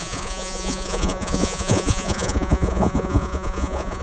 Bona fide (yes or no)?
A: no